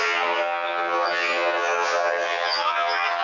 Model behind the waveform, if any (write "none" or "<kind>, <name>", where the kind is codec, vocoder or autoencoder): vocoder, HiFi-GAN